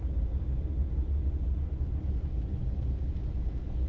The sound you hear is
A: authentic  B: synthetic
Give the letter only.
A